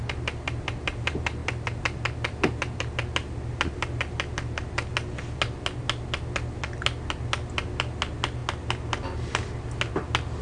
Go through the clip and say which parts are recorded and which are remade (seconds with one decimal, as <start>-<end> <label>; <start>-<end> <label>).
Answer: 0.0-10.4 recorded